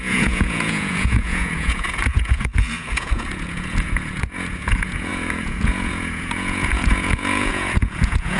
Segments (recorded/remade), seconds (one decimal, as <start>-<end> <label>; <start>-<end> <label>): 0.0-8.4 remade